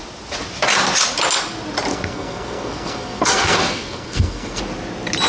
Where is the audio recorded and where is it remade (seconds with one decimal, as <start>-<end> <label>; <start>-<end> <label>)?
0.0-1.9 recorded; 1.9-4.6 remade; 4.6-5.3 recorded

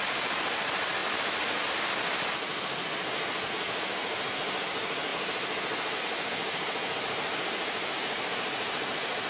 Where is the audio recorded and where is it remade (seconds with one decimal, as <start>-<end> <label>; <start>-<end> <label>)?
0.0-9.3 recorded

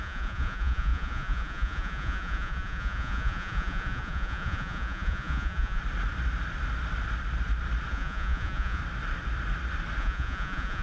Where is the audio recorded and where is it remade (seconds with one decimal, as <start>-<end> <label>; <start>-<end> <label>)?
0.0-5.8 remade; 5.8-7.9 recorded; 7.9-8.8 remade; 8.8-10.0 recorded; 10.0-10.8 remade

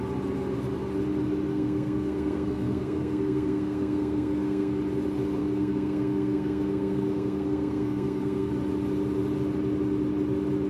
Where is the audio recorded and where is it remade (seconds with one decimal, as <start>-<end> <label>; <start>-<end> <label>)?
0.0-1.5 recorded; 1.5-4.8 remade; 4.8-5.4 recorded; 5.4-8.5 remade; 8.5-10.7 recorded

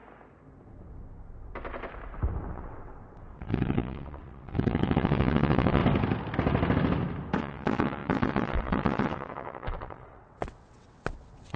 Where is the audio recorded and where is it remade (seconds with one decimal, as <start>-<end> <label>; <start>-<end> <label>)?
0.0-2.5 recorded; 2.5-5.8 remade; 5.8-7.4 recorded; 7.4-11.6 remade